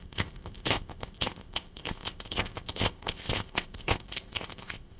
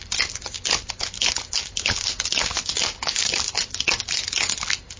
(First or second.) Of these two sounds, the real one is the second